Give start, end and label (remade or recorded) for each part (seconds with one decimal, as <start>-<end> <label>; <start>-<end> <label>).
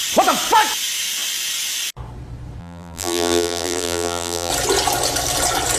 0.0-2.6 recorded; 2.6-4.5 remade; 4.5-5.8 recorded